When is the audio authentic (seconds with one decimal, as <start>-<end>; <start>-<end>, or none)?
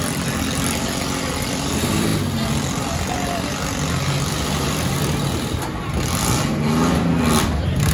2.1-4.6; 5.0-7.4